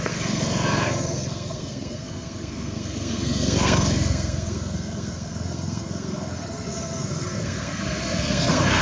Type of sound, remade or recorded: remade